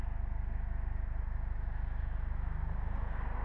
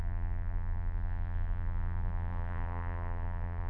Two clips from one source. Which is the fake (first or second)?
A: second